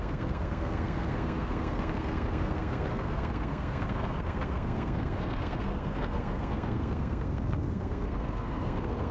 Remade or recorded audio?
remade